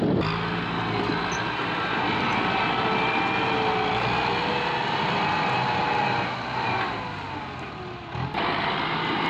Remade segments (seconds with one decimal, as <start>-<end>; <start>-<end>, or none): none